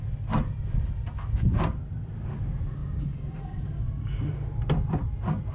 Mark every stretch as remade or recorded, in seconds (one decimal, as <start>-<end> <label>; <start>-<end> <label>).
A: 0.0-5.5 recorded